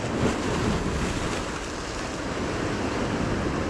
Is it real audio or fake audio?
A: real